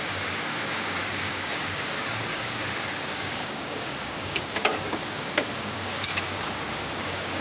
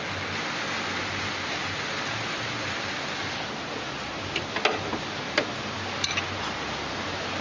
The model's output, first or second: first